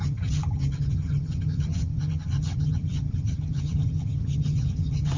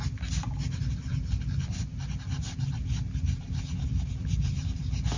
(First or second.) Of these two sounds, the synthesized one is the first